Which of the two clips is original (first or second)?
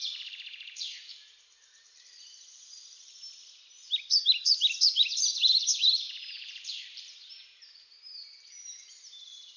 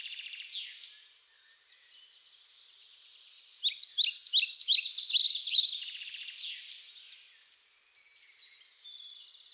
second